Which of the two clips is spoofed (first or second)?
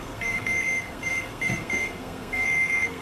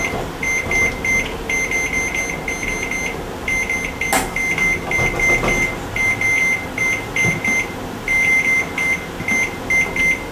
first